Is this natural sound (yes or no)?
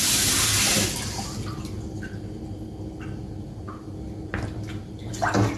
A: yes